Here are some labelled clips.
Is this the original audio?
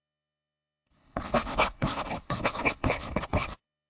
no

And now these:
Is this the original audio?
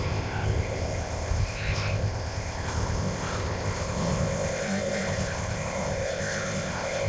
no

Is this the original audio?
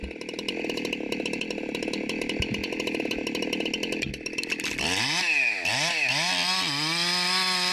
yes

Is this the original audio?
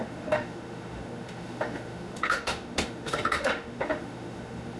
no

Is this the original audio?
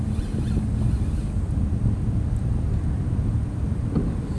yes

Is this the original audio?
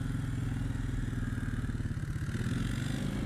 yes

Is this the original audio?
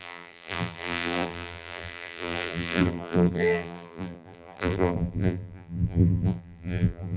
no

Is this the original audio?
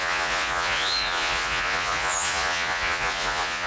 no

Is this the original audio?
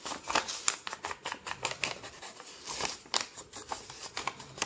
yes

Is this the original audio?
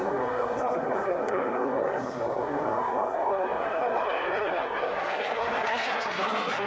no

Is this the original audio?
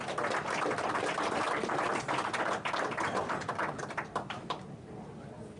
yes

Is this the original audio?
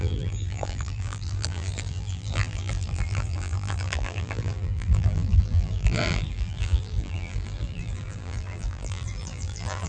no